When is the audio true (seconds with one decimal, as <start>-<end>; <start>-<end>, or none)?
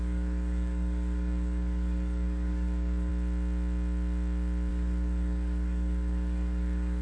3.1-4.7